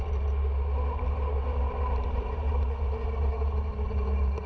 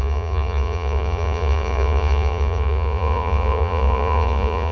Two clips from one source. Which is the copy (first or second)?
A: second